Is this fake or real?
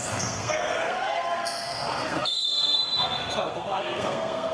fake